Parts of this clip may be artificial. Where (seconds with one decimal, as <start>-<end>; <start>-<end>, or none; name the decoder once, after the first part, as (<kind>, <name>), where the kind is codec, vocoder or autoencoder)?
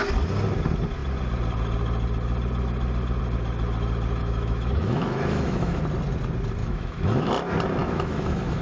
4.2-5.8 (autoencoder, DAC-VAE); 6.6-7.3; 7.8-8.6